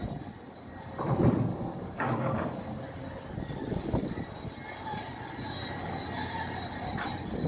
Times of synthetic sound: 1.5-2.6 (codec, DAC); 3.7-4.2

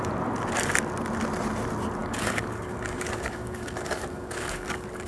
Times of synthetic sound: 2.0-5.1 (codec, DAC)

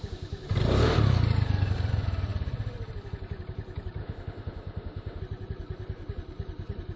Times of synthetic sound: 4.0-5.2 (autoencoder, DAC-VAE)

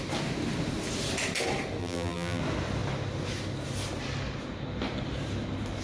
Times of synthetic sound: 1.8-2.4 (vocoder, BigVGAN v2)

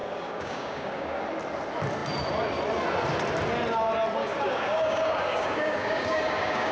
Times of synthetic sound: 0.0-1.2 (codec, DAC); 4.2-6.7

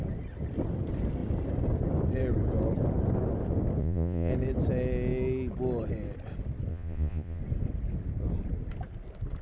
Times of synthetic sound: 3.8-4.3 (vocoder, Vocos); 6.7-7.4